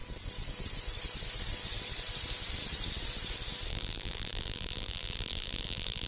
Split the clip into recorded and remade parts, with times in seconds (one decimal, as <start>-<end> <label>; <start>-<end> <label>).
0.0-3.7 recorded; 3.7-6.1 remade